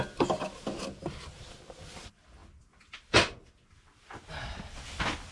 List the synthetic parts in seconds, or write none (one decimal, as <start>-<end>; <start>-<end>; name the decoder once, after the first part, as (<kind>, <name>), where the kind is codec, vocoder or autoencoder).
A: none